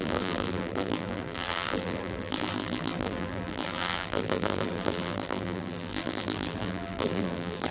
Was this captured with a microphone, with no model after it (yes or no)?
no